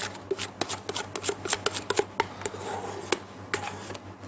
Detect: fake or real real